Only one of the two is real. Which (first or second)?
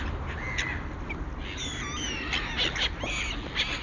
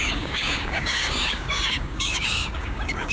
first